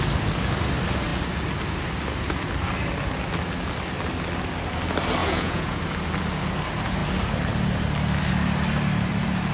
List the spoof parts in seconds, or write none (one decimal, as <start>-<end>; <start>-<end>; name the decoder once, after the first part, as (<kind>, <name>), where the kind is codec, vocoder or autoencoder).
5.2-5.8 (vocoder, Vocos)